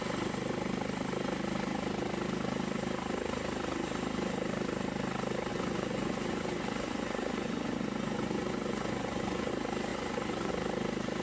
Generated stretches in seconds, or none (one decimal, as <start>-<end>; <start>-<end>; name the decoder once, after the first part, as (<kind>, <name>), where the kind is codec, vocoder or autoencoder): 5.5-9.5 (vocoder, Vocos); 9.9-10.5